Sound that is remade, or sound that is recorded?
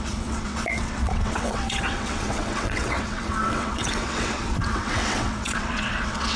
remade